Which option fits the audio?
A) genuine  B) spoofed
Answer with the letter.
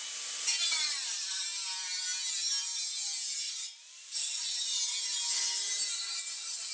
A